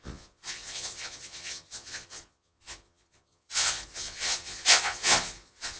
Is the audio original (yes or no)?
no